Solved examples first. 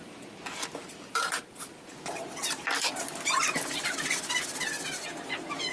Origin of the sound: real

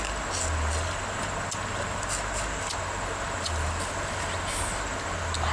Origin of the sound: real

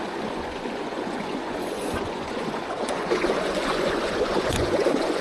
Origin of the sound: fake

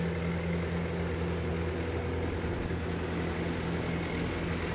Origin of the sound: real